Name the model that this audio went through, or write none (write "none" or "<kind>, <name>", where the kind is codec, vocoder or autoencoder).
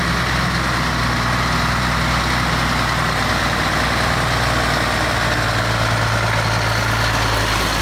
none